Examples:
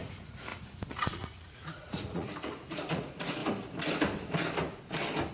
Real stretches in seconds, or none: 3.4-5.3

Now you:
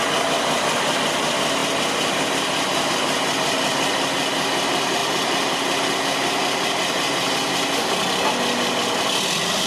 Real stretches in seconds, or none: 0.0-9.7

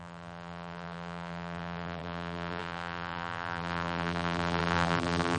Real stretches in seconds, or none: none